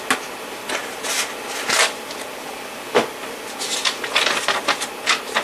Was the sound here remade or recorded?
recorded